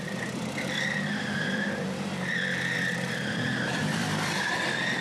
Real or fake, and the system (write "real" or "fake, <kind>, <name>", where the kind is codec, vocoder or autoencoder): fake, vocoder, BigVGAN v2